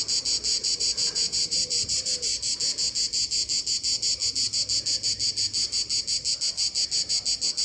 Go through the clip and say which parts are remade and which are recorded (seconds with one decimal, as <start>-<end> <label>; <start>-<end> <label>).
0.0-0.6 recorded; 0.6-2.1 remade; 2.1-7.6 recorded